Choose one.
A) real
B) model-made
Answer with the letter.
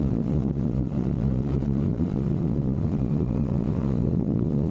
B